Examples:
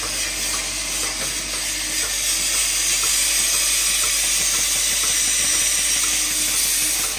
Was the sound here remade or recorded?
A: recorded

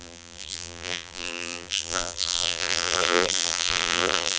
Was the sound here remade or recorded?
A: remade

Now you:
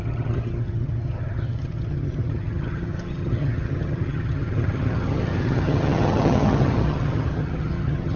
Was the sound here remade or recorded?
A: remade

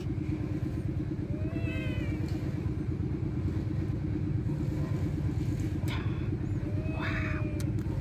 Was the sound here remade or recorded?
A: recorded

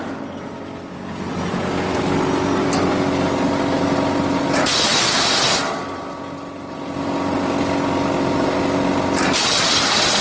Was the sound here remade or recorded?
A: recorded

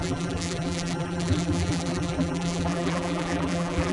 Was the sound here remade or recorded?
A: remade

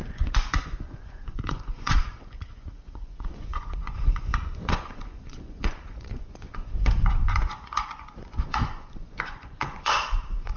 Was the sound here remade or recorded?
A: remade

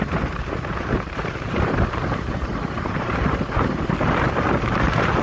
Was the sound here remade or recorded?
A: remade